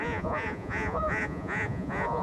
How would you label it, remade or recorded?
remade